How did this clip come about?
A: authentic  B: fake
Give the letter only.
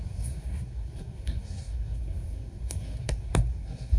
B